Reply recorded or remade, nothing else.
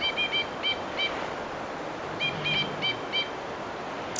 recorded